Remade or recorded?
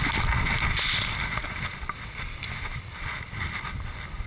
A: recorded